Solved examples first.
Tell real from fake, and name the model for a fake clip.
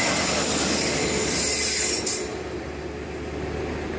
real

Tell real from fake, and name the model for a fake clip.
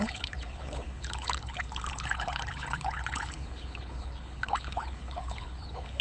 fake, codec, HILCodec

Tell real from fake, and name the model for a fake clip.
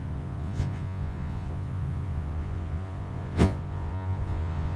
fake, vocoder, Vocos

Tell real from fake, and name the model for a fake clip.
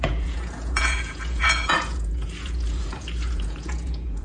fake, vocoder, Vocos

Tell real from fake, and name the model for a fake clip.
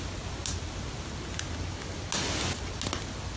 real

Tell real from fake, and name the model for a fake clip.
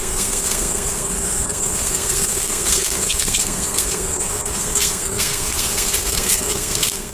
fake, codec, SNAC